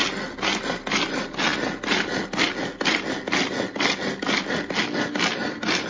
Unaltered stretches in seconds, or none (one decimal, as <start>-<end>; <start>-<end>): 0.0-5.9